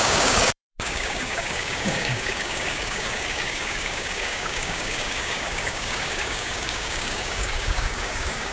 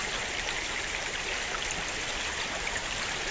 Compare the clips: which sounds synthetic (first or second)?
first